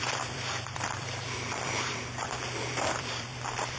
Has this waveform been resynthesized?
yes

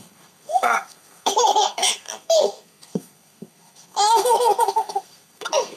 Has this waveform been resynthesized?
yes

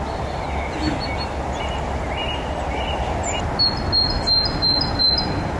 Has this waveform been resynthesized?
no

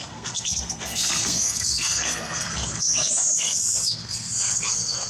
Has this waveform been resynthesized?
yes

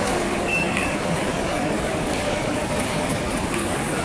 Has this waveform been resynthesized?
yes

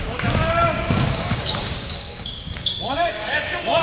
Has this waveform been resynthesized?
yes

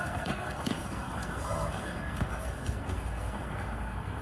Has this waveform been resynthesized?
yes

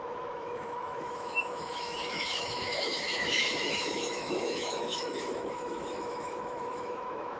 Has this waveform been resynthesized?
yes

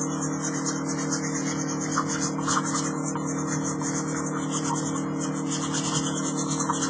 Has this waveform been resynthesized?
no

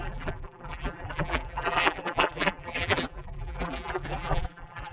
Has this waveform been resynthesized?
yes